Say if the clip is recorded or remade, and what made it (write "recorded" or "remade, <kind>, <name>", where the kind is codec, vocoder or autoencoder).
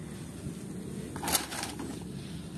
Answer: recorded